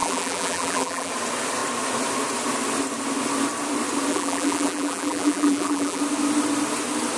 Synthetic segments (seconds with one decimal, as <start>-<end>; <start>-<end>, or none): 0.0-1.1; 4.1-6.0